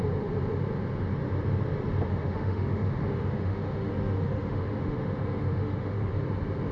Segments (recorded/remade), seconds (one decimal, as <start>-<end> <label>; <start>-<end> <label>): 0.0-2.1 recorded; 2.1-6.1 remade; 6.1-6.7 recorded